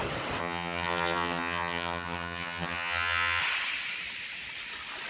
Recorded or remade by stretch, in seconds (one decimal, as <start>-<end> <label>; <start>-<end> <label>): 0.0-0.4 recorded; 0.4-3.4 remade; 3.4-5.1 recorded